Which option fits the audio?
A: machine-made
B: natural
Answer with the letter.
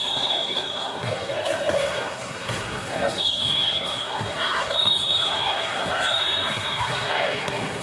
A